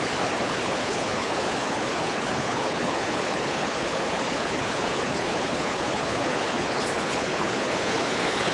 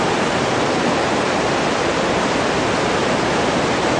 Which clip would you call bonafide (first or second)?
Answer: second